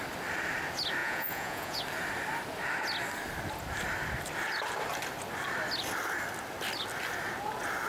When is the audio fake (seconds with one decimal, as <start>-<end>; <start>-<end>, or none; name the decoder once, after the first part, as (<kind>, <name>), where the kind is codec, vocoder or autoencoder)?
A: 1.0-1.8 (vocoder, Vocos)